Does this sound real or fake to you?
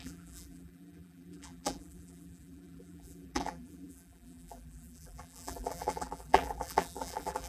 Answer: fake